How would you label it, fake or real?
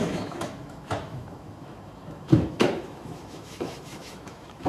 fake